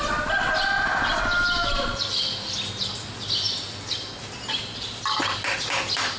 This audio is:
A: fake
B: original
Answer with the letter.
B